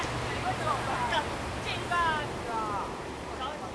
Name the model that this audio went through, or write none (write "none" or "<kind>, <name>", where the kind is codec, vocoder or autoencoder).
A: none